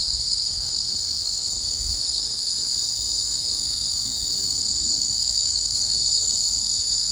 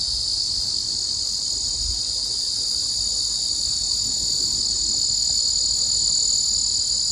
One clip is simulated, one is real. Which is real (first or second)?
second